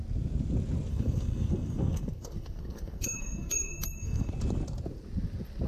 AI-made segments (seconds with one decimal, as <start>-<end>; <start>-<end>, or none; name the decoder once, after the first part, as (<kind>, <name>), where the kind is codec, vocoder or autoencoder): 0.9-4.3 (codec, SNAC)